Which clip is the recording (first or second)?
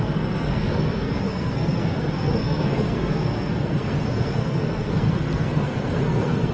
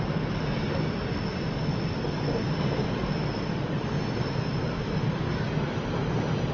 second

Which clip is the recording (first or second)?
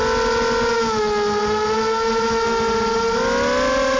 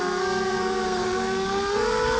first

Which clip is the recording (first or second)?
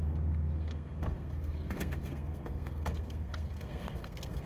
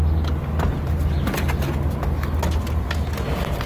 second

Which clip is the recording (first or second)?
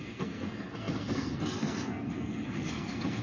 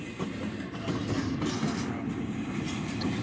second